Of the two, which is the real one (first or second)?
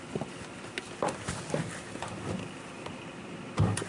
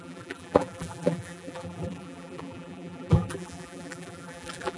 first